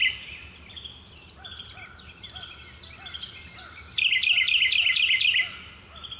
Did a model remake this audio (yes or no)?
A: no